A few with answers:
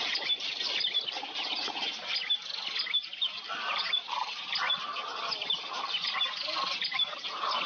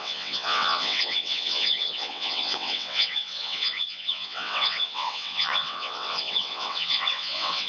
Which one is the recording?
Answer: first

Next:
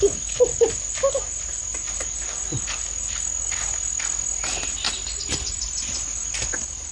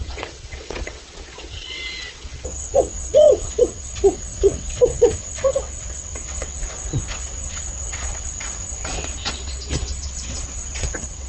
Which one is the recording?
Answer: first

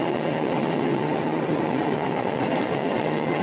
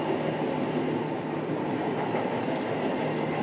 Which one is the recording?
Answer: second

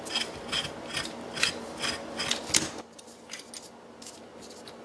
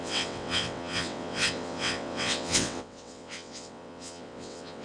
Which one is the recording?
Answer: first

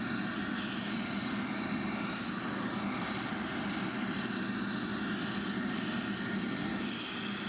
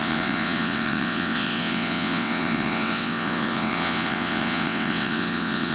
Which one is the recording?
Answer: first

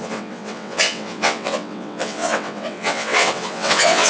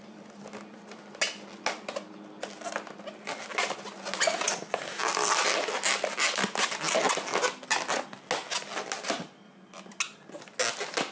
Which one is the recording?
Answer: second